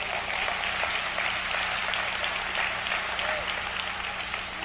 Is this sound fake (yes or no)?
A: no